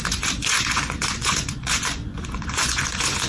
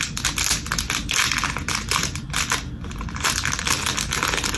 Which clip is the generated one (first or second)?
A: first